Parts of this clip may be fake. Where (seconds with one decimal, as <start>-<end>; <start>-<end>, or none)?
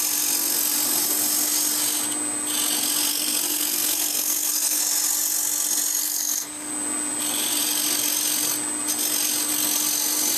3.1-4.8; 6.0-6.7